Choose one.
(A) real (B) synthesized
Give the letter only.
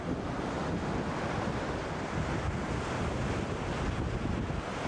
A